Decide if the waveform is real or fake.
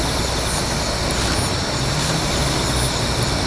real